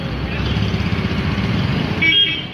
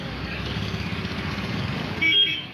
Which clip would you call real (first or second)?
first